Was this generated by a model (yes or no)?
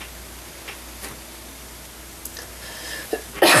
no